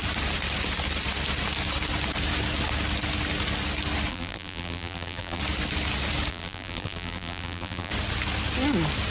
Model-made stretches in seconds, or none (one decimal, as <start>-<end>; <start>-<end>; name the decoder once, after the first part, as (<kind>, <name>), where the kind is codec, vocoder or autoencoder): 4.1-5.4 (vocoder, BigVGAN v2); 6.3-7.9